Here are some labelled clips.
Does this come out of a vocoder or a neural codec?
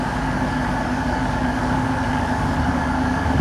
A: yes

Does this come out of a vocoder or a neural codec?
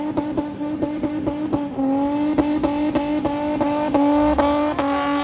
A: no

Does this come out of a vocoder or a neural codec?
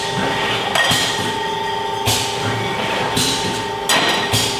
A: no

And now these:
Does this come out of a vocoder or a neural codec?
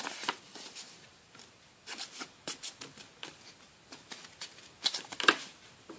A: no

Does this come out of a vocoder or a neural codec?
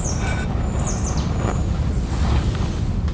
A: no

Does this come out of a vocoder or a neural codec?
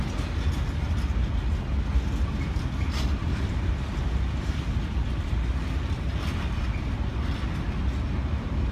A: no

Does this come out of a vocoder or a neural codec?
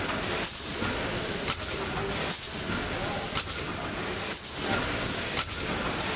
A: no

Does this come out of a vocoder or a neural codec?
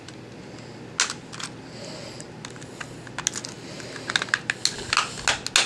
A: no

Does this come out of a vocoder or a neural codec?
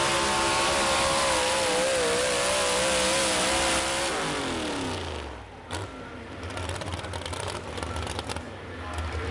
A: no